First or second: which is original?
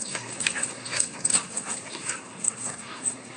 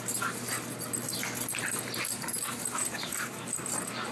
second